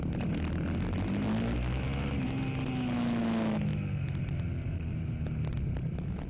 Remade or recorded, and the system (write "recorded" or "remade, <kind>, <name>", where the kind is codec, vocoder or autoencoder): recorded